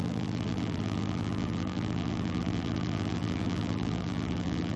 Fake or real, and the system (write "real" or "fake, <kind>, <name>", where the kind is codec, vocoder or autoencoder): fake, vocoder, BigVGAN v2